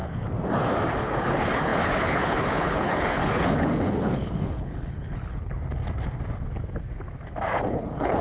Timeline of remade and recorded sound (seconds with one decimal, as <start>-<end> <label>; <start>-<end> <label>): 0.0-1.0 recorded; 1.0-5.5 remade; 5.5-7.6 recorded; 7.6-8.2 remade

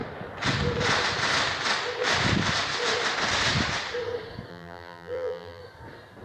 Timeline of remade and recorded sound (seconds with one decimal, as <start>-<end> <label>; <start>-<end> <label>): 0.0-4.5 recorded; 4.5-5.6 remade; 5.6-6.2 recorded

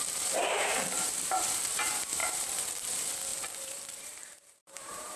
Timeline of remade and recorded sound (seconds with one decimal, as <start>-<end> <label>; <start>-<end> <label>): 0.0-5.2 remade

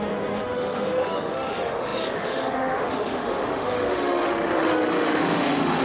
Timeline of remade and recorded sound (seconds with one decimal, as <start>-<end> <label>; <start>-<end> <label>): 0.0-5.8 remade

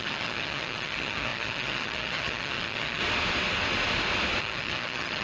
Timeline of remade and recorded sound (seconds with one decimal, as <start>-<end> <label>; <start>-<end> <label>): 0.0-3.0 remade; 3.0-4.4 recorded; 4.4-5.2 remade